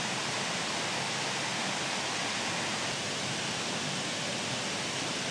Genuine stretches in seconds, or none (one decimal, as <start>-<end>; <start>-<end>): 0.0-5.3